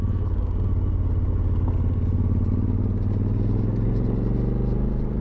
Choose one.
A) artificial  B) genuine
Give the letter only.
B